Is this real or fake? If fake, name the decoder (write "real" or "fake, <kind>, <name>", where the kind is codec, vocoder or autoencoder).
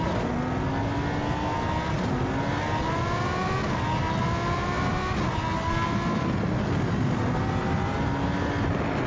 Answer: real